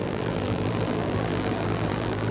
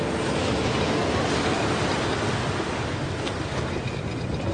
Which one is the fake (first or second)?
first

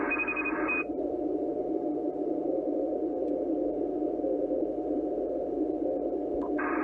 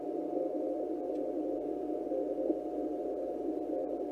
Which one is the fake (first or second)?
first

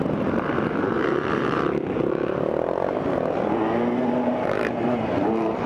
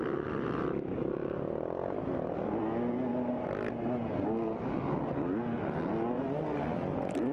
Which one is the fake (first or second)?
first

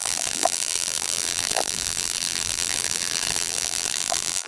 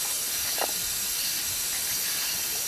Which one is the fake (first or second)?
first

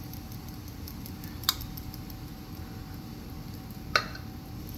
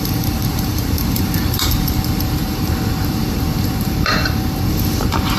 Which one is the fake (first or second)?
second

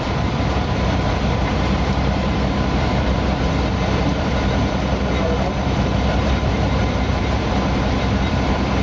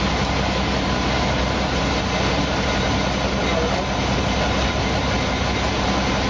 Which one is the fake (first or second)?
first